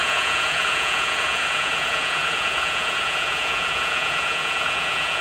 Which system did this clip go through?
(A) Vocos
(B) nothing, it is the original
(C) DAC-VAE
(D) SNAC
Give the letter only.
A